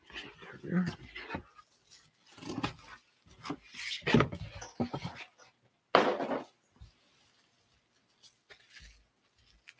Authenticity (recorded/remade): recorded